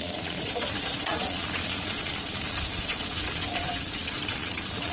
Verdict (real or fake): fake